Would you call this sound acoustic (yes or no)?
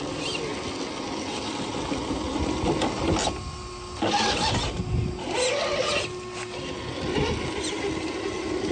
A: yes